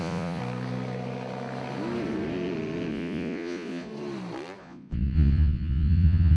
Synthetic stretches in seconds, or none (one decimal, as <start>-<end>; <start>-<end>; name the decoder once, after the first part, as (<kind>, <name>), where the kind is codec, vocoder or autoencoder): 0.0-0.4 (vocoder, Vocos); 2.9-3.9; 4.6-6.4